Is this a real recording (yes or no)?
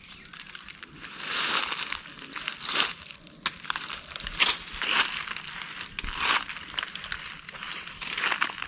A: yes